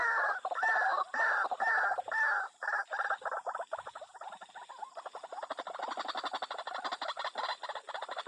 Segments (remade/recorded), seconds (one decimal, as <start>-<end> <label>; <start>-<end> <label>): 0.0-8.3 recorded